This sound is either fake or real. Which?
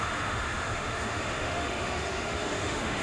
fake